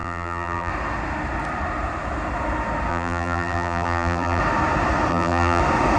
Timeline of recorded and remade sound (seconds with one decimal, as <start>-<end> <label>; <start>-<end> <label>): 0.0-0.7 remade; 0.7-2.9 recorded; 2.9-4.4 remade; 4.4-5.1 recorded; 5.1-5.6 remade; 5.6-6.0 recorded